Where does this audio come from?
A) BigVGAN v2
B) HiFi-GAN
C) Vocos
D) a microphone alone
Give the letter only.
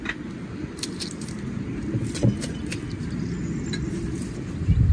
D